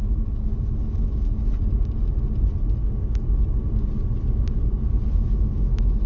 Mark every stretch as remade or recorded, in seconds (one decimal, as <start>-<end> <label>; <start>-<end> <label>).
0.0-1.4 remade; 1.4-5.1 recorded; 5.1-6.1 remade